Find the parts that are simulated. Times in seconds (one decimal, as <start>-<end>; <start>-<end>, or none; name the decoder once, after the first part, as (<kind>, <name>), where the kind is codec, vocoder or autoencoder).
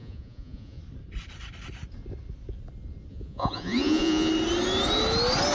0.0-0.8 (vocoder, Vocos); 3.1-4.3